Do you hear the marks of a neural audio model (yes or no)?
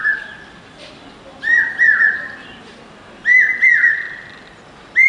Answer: no